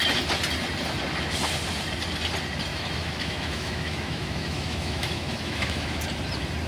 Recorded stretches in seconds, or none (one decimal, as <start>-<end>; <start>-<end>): 0.0-2.7; 6.0-6.7